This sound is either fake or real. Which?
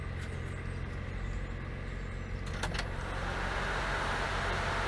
real